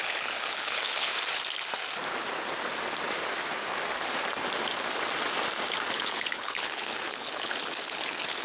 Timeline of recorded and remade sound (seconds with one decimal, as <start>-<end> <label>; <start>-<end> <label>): 0.0-1.1 remade; 1.1-5.9 recorded; 5.9-8.4 remade